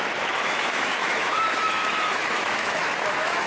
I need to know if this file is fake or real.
fake